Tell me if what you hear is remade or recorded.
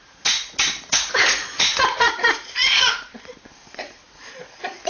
remade